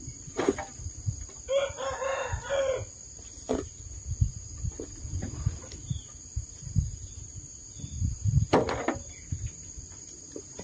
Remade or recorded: recorded